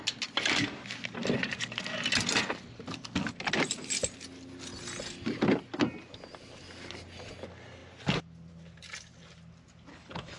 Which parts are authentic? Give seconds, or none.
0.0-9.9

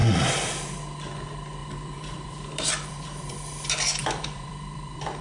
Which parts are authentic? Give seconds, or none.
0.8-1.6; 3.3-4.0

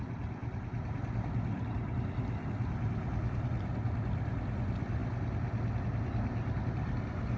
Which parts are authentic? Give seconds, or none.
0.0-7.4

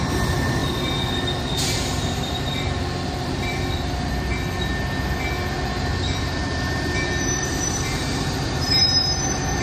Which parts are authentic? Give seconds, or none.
0.6-1.6; 4.7-6.2

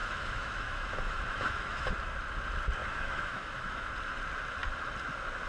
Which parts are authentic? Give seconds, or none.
1.9-2.8; 3.9-5.5